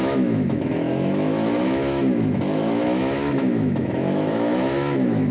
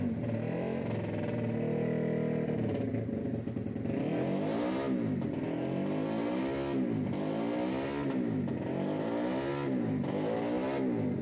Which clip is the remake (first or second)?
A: first